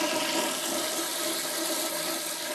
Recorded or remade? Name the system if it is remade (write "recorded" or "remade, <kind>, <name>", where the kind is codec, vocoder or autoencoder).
recorded